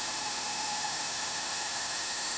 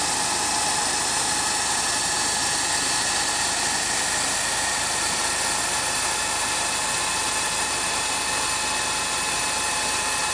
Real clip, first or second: second